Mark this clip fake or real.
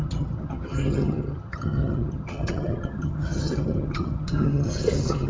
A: fake